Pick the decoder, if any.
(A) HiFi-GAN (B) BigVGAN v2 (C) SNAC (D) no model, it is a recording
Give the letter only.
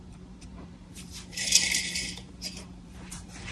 B